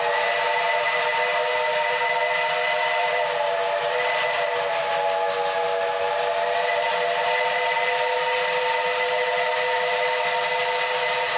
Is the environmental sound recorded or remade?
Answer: recorded